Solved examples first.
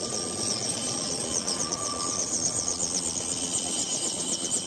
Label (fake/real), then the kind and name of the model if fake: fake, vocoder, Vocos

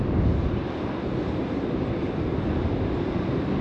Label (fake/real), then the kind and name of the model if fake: real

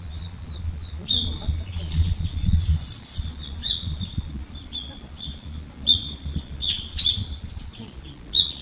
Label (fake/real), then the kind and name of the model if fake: fake, vocoder, Vocos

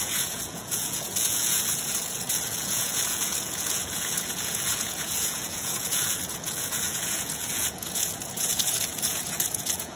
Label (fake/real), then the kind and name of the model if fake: fake, vocoder, Vocos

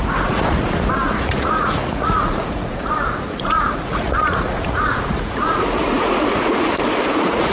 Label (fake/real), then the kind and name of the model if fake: fake, vocoder, Vocos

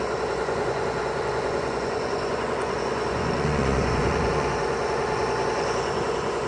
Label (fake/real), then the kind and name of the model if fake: fake, vocoder, Vocos